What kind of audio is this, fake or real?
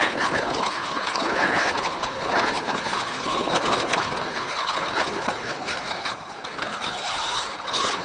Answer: fake